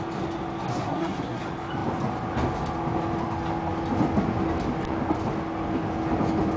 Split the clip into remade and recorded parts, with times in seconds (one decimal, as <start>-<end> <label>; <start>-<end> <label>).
0.0-0.7 recorded; 0.7-1.4 remade; 1.4-6.6 recorded